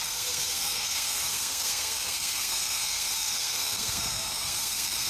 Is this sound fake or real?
fake